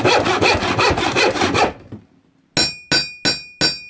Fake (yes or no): no